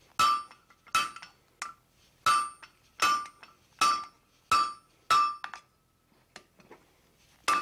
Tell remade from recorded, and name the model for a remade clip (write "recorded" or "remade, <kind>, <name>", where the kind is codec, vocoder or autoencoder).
recorded